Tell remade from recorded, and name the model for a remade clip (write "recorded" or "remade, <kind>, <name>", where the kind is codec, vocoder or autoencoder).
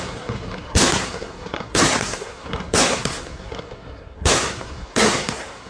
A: remade, codec, SNAC